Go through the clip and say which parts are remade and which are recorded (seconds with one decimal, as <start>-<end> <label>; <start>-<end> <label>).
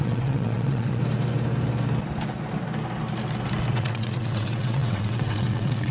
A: 0.0-1.0 remade; 1.0-3.7 recorded; 3.7-5.9 remade